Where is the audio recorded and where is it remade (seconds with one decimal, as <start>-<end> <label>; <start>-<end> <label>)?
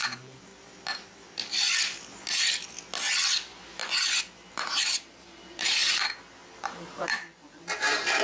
0.0-0.5 remade; 0.5-4.5 recorded; 4.5-5.8 remade; 5.8-6.6 recorded; 6.6-8.2 remade